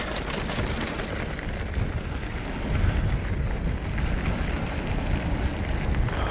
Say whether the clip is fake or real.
real